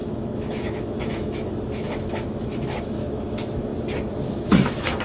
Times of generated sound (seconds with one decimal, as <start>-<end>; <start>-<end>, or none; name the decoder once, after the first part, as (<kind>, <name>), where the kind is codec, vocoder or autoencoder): 0.0-3.7 (autoencoder, DAC-VAE); 4.2-5.0